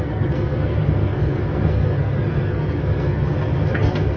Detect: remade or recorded remade